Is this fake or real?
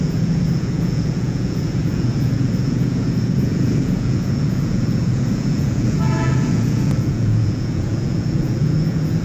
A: fake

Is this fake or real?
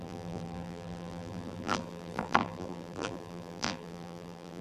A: fake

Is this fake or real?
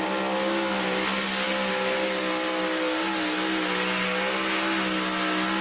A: real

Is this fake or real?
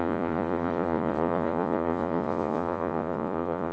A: fake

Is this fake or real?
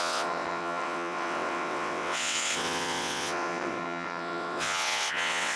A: fake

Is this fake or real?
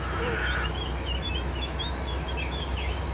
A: fake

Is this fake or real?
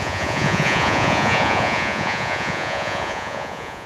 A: fake